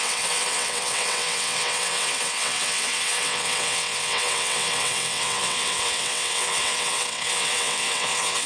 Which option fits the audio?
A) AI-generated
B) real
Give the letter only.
A